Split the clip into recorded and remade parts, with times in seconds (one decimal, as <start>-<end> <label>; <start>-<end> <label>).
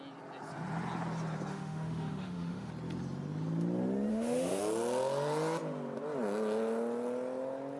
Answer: 0.0-1.5 recorded; 1.5-2.7 remade; 2.7-4.1 recorded; 4.1-4.6 remade; 4.6-7.8 recorded